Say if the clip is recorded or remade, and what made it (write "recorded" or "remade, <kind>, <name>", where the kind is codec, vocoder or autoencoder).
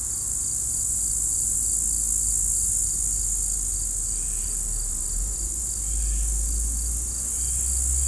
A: recorded